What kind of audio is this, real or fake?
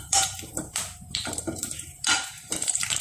fake